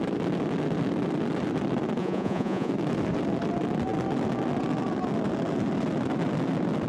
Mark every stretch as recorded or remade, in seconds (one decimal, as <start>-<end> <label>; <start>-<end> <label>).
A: 0.0-2.0 recorded; 2.0-2.7 remade; 2.7-6.9 recorded

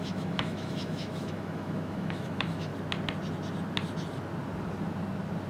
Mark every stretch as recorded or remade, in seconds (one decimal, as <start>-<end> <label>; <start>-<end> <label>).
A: 0.0-2.7 remade; 2.7-5.5 recorded

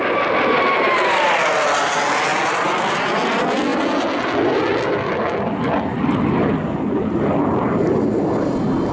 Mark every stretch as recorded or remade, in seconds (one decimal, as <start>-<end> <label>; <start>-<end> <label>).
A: 0.0-8.9 recorded

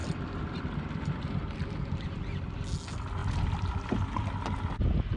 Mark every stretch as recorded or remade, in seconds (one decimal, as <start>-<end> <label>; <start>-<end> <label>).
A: 0.0-1.2 remade; 1.2-5.2 recorded

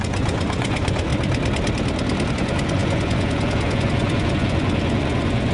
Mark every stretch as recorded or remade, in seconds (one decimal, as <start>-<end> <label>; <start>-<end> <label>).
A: 0.0-1.1 remade; 1.1-2.3 recorded; 2.3-5.5 remade